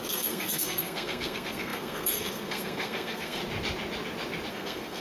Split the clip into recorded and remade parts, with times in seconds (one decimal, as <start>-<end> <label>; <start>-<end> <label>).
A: 0.0-3.4 remade; 3.4-4.5 recorded; 4.5-5.0 remade